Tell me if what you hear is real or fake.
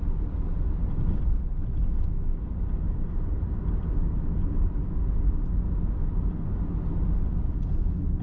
real